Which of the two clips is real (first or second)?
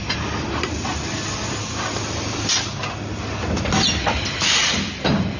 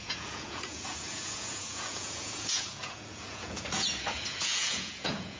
first